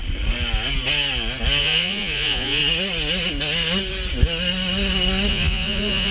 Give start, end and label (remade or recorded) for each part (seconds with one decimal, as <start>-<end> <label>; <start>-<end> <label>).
0.0-1.6 recorded; 1.6-2.6 remade; 2.6-5.3 recorded; 5.3-6.1 remade